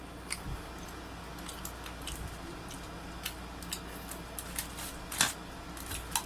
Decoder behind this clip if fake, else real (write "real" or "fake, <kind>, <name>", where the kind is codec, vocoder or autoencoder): real